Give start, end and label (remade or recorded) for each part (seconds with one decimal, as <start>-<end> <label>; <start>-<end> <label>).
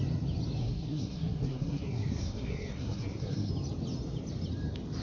0.0-0.6 recorded; 0.6-3.5 remade; 3.5-5.0 recorded